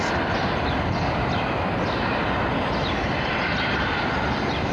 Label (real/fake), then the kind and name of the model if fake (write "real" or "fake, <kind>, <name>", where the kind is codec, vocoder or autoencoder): real